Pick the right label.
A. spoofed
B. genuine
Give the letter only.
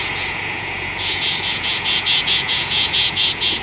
A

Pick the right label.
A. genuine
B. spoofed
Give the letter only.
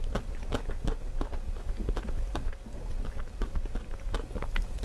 A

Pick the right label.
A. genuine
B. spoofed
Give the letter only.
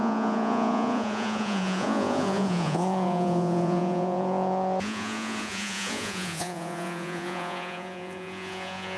B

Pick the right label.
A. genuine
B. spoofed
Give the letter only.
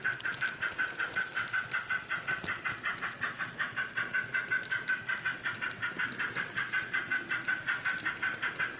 A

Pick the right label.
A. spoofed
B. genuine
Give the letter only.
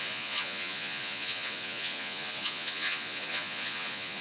A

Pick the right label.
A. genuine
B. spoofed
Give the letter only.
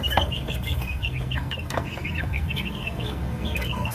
B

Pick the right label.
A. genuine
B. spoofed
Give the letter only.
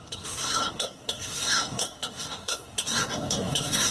B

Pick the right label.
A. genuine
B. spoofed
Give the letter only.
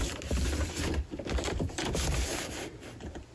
A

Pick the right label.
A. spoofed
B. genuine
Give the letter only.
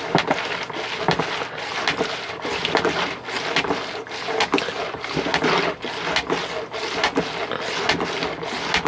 B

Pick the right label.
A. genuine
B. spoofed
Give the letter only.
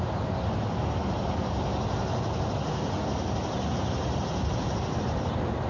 A